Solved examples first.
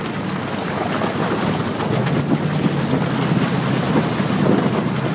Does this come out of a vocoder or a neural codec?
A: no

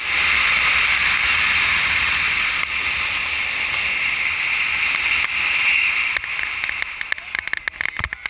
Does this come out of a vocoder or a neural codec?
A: no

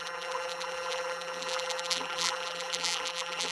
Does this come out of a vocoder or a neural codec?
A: yes